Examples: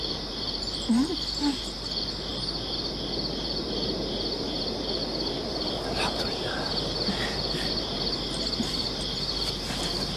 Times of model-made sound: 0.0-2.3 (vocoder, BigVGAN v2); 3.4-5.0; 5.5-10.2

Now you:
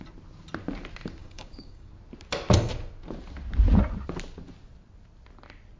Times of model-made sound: 1.2-1.9 (codec, DAC)

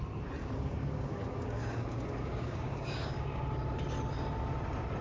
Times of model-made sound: 0.4-3.4 (codec, DAC)

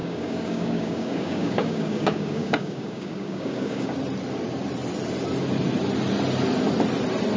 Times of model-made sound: 0.0-3.9 (codec, DAC)